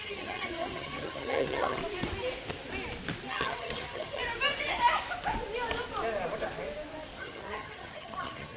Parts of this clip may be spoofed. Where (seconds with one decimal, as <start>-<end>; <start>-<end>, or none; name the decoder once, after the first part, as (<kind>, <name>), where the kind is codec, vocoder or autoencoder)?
0.0-1.8 (vocoder, HiFi-GAN); 3.3-4.2; 7.2-8.6